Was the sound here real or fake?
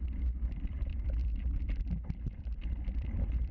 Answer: fake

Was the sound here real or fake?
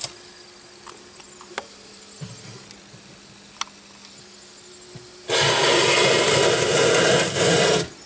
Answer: real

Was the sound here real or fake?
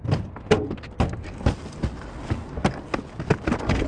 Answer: real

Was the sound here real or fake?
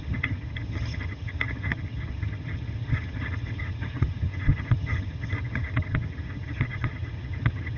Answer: fake